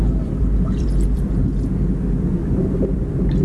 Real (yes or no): no